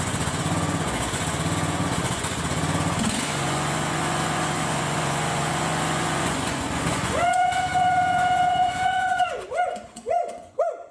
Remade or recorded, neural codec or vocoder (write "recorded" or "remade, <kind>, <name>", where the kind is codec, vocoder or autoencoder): remade, vocoder, Vocos